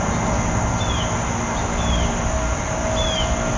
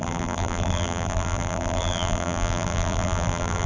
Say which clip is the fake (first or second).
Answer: second